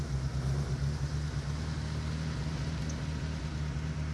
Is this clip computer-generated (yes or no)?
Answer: no